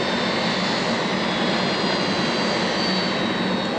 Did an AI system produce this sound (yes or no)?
no